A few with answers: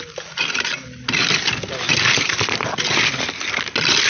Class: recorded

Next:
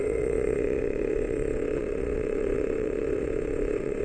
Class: remade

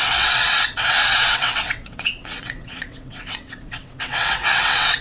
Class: remade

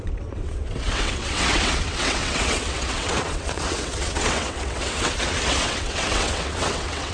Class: remade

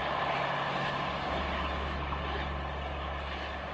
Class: recorded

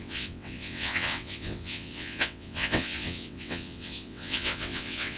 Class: remade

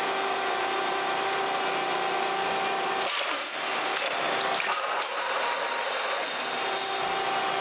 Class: recorded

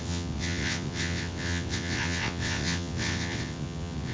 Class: remade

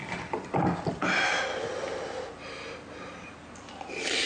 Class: recorded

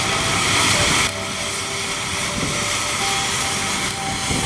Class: recorded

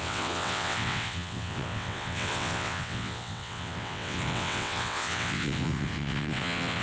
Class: remade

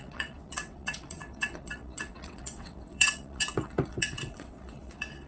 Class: remade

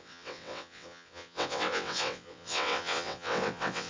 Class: remade